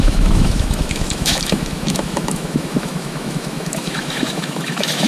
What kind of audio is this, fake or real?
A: fake